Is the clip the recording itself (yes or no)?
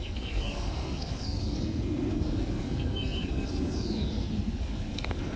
no